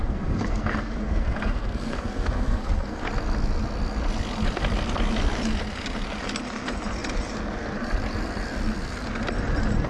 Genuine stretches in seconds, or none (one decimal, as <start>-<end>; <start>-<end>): 3.1-9.9